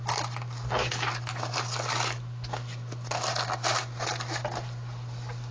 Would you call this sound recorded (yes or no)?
yes